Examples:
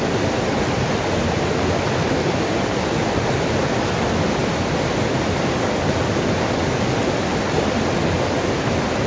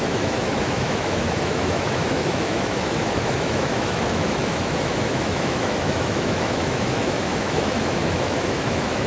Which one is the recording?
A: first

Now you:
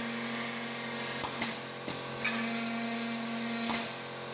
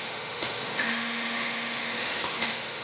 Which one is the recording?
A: first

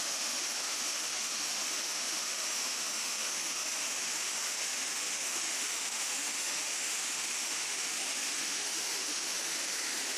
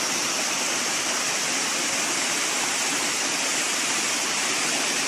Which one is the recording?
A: second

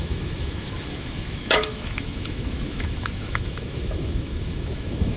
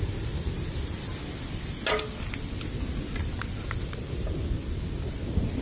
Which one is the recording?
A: second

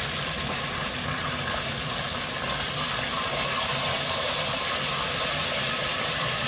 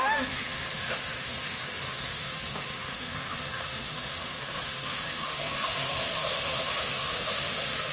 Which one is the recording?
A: first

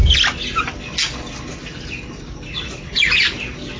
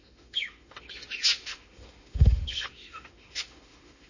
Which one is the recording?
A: first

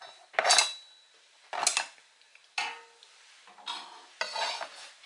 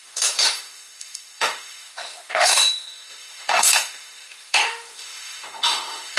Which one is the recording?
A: first